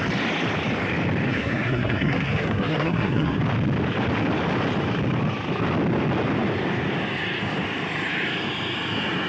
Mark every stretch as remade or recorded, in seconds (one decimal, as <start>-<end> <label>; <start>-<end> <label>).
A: 0.0-1.3 recorded; 1.3-3.4 remade; 3.4-9.3 recorded